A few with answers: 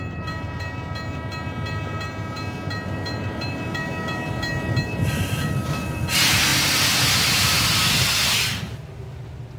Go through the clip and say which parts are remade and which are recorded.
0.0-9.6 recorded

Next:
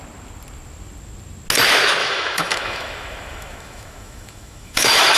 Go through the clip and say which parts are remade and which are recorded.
0.0-2.0 recorded; 2.0-5.2 remade

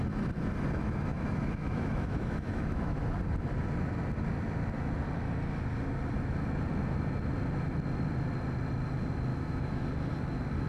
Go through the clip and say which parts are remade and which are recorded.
0.0-1.1 recorded; 1.1-3.0 remade; 3.0-9.3 recorded; 9.3-9.8 remade; 9.8-10.7 recorded

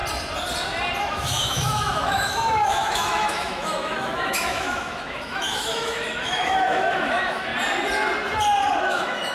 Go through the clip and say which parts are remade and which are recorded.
0.0-1.0 recorded; 1.0-7.5 remade; 7.5-8.9 recorded; 8.9-9.3 remade